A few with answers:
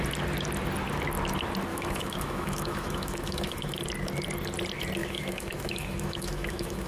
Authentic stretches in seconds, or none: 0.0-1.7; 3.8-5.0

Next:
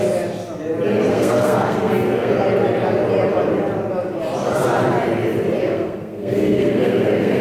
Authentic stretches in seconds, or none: 0.0-1.1; 2.3-5.6

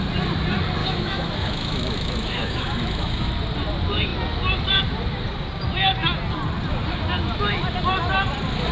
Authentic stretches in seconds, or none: 0.0-0.8; 3.3-8.7

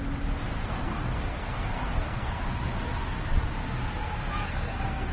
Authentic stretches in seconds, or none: 0.0-0.6; 2.4-4.0